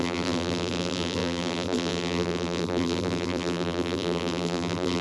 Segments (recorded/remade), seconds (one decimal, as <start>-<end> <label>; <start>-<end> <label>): 0.0-5.0 remade